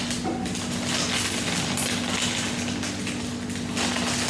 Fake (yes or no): no